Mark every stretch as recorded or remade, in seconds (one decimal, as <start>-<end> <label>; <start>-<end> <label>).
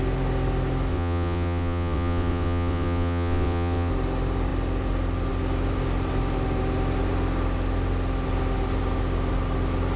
0.0-0.9 recorded; 0.9-3.9 remade; 3.9-10.0 recorded